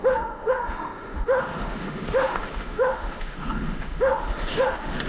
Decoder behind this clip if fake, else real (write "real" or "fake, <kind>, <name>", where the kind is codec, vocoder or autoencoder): fake, autoencoder, DAC-VAE